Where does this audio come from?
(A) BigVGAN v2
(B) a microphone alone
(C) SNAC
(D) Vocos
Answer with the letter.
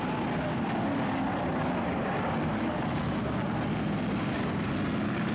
B